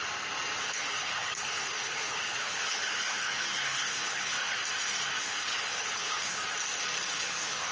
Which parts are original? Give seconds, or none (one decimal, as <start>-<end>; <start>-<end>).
0.0-0.6; 4.6-5.2; 6.4-7.1